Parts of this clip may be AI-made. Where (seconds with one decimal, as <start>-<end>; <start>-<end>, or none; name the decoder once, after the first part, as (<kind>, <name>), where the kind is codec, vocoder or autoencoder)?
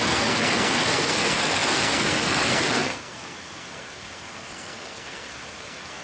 0.0-6.0 (codec, SNAC)